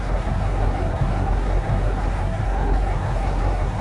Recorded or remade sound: remade